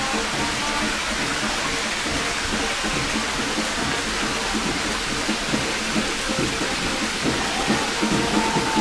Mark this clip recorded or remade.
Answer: recorded